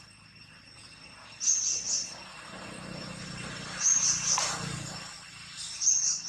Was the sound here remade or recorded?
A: recorded